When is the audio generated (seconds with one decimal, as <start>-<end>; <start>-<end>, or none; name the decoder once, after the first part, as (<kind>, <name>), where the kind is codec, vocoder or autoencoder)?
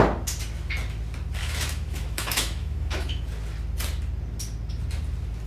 1.4-3.2 (autoencoder, DAC-VAE)